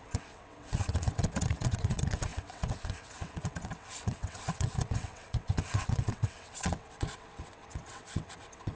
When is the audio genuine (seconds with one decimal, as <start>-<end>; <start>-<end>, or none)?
none

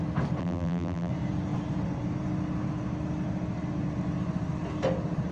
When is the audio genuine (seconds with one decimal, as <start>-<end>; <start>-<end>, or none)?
0.0-0.4; 1.1-5.3